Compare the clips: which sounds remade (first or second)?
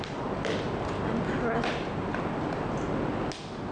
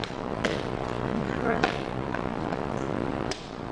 second